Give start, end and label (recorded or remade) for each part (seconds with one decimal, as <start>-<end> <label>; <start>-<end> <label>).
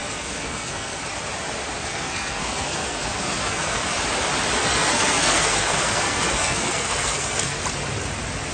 0.0-1.0 remade; 1.0-1.9 recorded; 1.9-3.8 remade; 3.8-4.6 recorded; 4.6-7.6 remade; 7.6-8.5 recorded